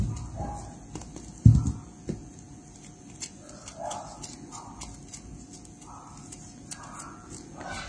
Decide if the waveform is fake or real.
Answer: real